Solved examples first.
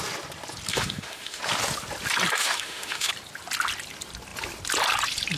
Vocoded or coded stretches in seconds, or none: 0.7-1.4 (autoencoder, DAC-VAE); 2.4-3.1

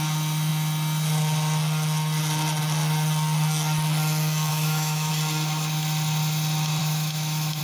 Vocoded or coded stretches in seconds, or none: 4.5-5.1 (autoencoder, DAC-VAE); 6.8-7.6

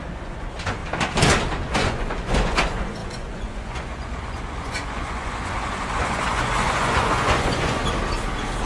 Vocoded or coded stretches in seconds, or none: 0.0-0.8 (vocoder, Vocos); 1.5-7.8

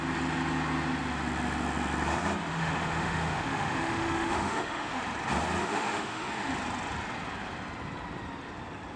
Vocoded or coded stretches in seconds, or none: 2.5-5.0 (autoencoder, DAC-VAE); 5.6-6.5

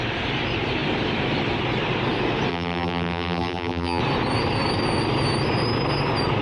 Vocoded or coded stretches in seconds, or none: 2.5-4.0 (vocoder, BigVGAN v2)

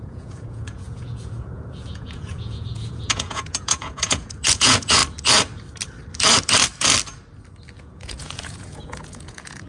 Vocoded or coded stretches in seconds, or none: 0.0-5.0 (vocoder, Vocos); 7.8-9.7

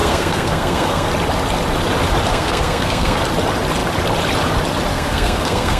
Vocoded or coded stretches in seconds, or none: 0.0-1.1 (codec, SNAC); 2.3-3.2; 4.9-5.8